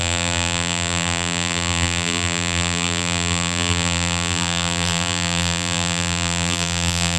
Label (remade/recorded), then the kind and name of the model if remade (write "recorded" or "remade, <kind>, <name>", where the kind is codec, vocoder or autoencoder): remade, vocoder, BigVGAN v2